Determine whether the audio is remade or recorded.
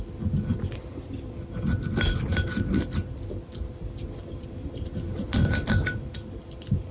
recorded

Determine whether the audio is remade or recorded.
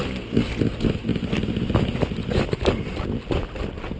recorded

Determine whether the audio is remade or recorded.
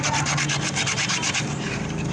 recorded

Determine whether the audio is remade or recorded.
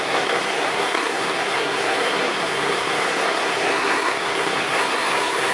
remade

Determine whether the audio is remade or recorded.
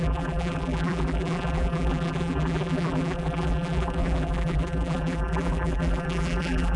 remade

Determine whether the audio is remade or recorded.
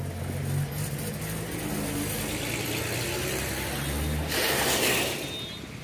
recorded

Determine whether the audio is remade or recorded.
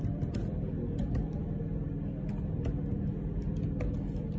recorded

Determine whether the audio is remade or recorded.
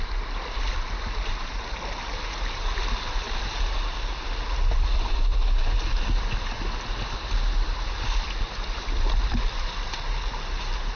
recorded